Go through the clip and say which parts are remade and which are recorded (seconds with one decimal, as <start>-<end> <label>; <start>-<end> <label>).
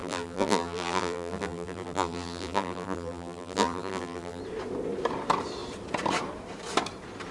0.0-4.4 remade; 4.4-7.3 recorded